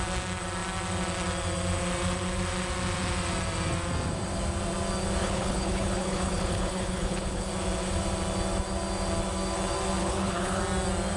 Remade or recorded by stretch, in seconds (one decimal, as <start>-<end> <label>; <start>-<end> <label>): 0.0-5.2 recorded; 5.2-7.5 remade; 7.5-10.0 recorded; 10.0-10.6 remade; 10.6-11.2 recorded